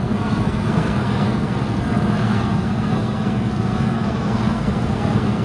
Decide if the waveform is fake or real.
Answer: fake